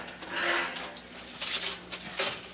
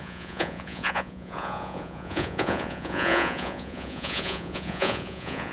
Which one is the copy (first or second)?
second